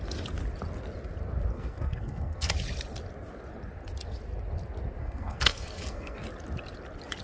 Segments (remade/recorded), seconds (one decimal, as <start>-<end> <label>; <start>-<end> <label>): 0.0-1.5 recorded; 1.5-2.5 remade; 2.5-5.0 recorded; 5.0-6.2 remade; 6.2-7.2 recorded